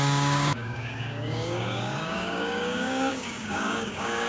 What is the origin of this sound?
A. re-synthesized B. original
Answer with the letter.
A